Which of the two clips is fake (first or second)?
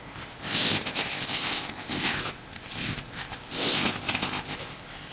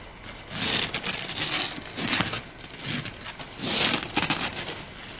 first